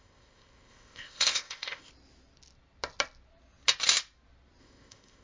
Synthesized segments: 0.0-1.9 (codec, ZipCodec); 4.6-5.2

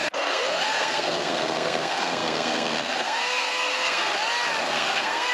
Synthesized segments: 0.0-4.1 (codec, SNAC); 4.6-5.3

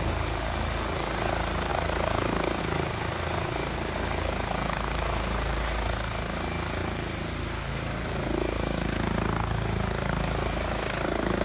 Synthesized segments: none

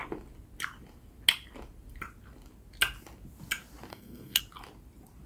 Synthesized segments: 3.9-4.4 (codec, SNAC)

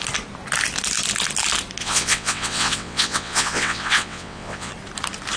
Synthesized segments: 1.8-4.7 (vocoder, WaveNeXt)